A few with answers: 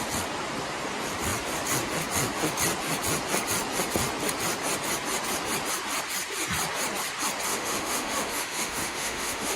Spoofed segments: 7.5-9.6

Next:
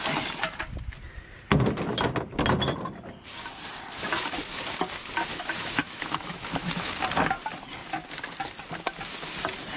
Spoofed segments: 5.3-6.9

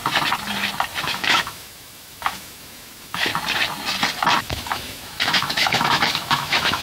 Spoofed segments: 1.0-3.3; 4.4-6.8

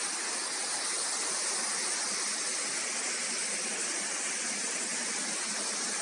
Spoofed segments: none

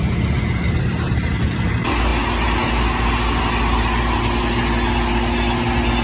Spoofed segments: none